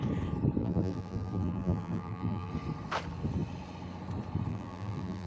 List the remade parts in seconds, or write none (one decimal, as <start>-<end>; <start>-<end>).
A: 0.6-2.5; 4.5-5.3